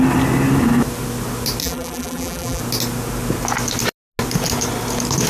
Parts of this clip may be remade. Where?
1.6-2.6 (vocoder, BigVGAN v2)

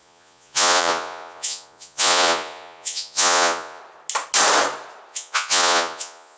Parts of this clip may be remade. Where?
0.0-3.8 (vocoder, Vocos); 5.1-6.4

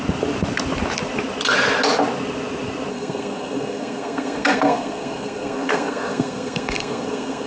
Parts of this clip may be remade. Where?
2.9-7.5 (codec, SNAC)

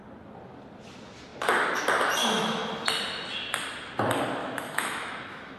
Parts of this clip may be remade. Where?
2.2-2.7 (autoencoder, DAC-VAE); 4.4-5.6

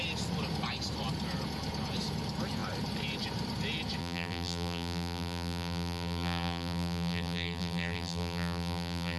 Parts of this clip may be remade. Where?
4.0-9.2 (vocoder, BigVGAN v2)

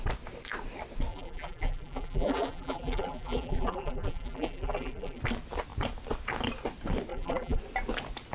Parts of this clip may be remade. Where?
1.1-5.2 (vocoder, BigVGAN v2); 7.1-7.6